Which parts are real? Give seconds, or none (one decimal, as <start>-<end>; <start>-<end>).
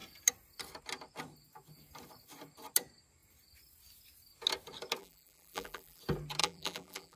0.0-5.0; 6.0-6.4